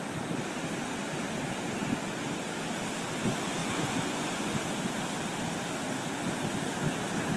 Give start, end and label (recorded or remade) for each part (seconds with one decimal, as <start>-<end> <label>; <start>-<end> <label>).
0.0-3.6 recorded; 3.6-4.6 remade; 4.6-7.4 recorded